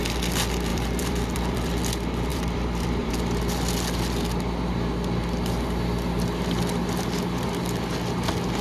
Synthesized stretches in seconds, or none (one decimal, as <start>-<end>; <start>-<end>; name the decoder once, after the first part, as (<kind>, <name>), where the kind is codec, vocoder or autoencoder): 0.7-1.8 (vocoder, BigVGAN v2); 2.3-3.1